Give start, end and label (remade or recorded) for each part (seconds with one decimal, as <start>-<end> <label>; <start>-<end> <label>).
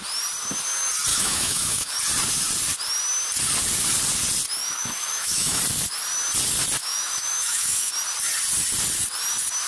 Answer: 0.0-1.1 recorded; 1.1-1.9 remade; 1.9-4.6 recorded; 4.6-5.6 remade; 5.6-6.8 recorded; 6.8-7.9 remade; 7.9-9.7 recorded